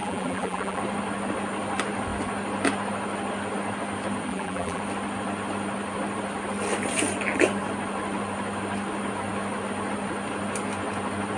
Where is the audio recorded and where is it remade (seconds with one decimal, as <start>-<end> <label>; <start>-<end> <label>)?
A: 0.0-0.8 remade; 0.8-4.3 recorded; 4.3-4.8 remade; 4.8-11.4 recorded